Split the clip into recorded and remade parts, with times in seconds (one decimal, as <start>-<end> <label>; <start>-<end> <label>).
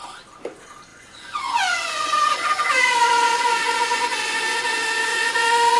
0.0-0.9 recorded; 0.9-4.4 remade; 4.4-5.1 recorded; 5.1-5.8 remade